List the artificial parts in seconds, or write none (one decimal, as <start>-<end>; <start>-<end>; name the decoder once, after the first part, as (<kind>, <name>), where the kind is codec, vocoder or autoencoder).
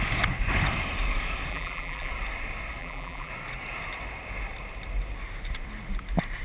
1.5-2.1 (vocoder, BigVGAN v2); 2.8-3.3